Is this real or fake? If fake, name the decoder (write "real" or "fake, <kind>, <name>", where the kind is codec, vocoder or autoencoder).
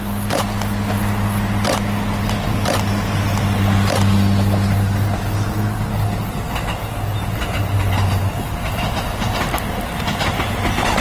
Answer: real